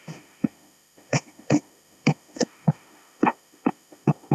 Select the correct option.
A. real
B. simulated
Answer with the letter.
B